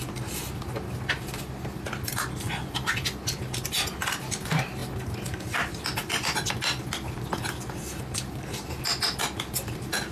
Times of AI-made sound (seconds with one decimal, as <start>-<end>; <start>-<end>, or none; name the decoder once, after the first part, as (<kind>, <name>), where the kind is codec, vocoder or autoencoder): none